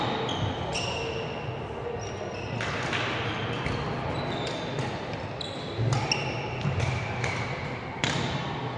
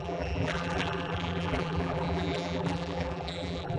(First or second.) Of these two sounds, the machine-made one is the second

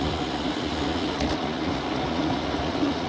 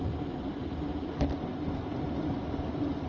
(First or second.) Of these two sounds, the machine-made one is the first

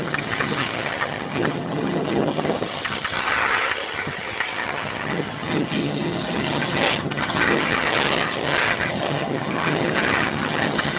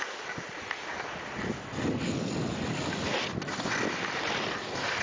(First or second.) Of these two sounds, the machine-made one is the first